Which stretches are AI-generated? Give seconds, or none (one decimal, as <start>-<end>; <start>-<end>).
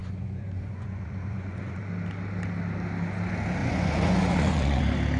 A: 0.0-1.8; 3.6-4.8